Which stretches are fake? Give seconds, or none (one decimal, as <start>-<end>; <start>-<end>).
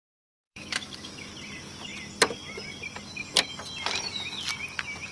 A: 0.0-1.3